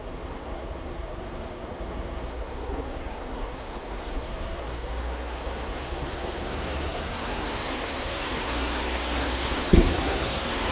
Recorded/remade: remade